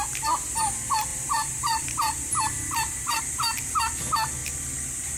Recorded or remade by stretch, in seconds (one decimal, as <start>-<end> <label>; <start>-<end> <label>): 0.0-1.1 recorded; 1.1-3.2 remade; 3.2-5.2 recorded